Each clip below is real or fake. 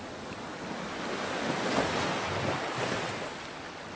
real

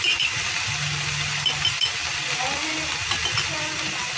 real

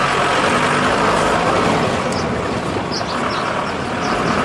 real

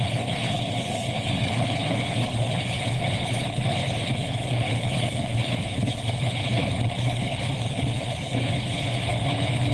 fake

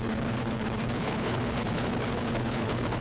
fake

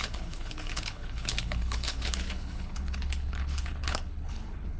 fake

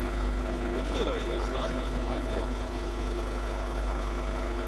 fake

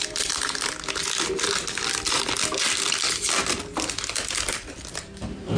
real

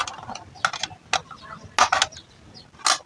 real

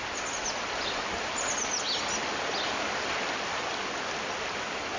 real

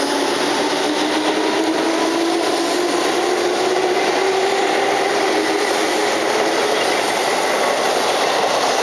real